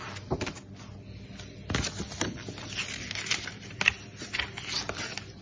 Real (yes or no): yes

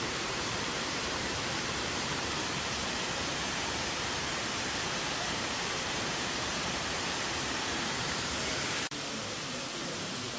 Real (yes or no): no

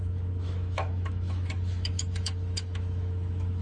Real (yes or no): no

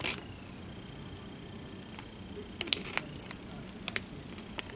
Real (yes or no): yes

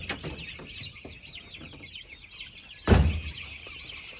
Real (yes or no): yes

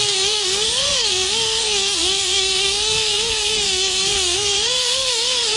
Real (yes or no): no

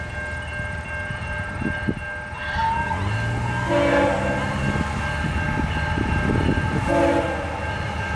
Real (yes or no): yes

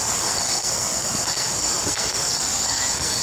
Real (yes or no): no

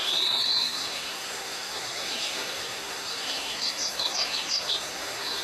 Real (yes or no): no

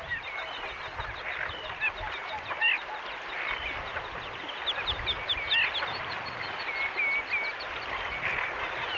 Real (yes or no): yes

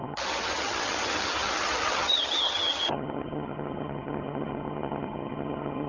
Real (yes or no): no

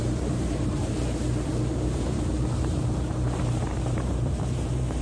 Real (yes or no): no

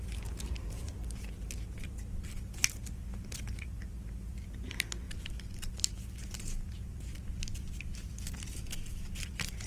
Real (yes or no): no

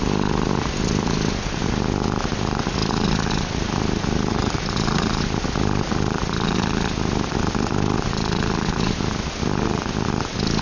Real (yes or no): yes